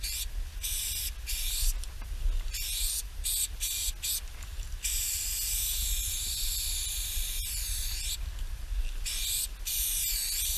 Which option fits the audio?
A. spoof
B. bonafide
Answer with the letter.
B